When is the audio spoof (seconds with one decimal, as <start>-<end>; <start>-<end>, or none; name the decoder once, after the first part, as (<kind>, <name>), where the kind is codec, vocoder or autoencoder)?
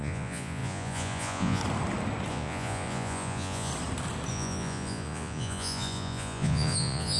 0.0-1.6 (vocoder, Vocos); 2.3-3.7; 4.3-7.2